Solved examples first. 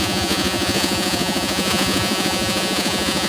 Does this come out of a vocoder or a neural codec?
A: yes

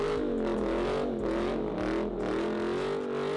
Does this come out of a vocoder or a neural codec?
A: no